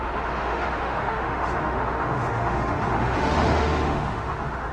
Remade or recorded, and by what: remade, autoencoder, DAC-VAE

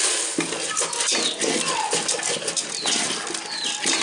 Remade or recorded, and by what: recorded